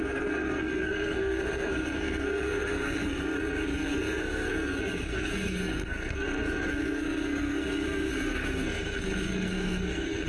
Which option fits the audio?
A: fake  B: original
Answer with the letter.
A